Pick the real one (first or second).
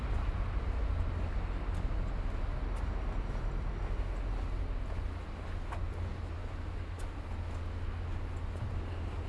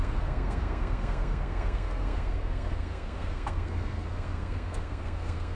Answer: first